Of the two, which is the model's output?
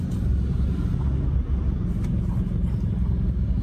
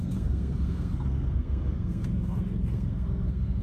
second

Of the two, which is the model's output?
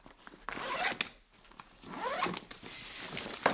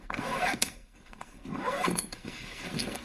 second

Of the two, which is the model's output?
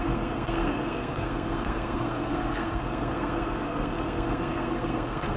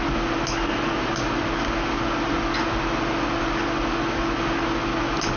first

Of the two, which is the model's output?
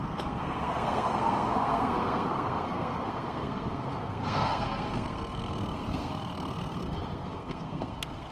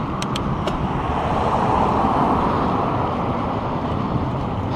first